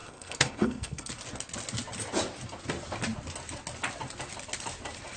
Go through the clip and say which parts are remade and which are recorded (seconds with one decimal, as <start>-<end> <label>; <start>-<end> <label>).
0.0-1.1 remade; 1.1-5.2 recorded